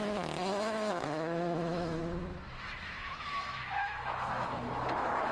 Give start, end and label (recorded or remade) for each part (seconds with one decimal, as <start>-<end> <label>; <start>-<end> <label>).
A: 0.0-2.0 remade; 2.0-2.6 recorded; 2.6-5.3 remade